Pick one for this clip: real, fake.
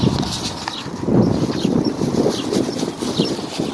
real